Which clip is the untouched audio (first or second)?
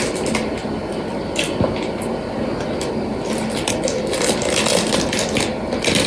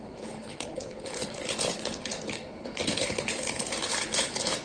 first